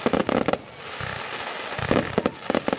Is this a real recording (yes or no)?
yes